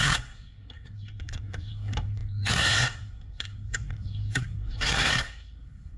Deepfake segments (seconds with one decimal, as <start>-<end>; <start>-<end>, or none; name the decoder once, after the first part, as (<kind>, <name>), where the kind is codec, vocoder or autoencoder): 0.0-6.0 (codec, SNAC)